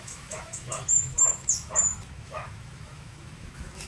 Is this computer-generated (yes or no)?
yes